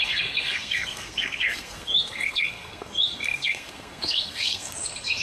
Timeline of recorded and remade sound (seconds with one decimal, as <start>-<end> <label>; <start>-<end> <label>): 0.0-5.2 remade